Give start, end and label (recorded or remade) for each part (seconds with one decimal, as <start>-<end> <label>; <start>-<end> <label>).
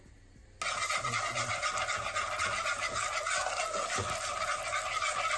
0.0-5.4 recorded